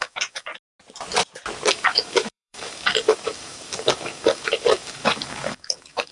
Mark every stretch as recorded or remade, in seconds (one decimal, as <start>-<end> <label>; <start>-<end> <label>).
0.0-0.5 remade; 0.5-1.7 recorded; 1.7-6.1 remade